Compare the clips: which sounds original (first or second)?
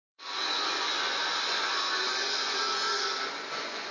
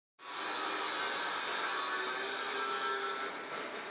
second